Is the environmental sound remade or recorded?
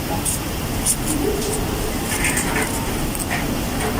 recorded